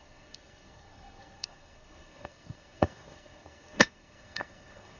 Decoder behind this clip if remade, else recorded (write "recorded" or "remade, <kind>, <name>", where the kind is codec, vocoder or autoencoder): remade, codec, SNAC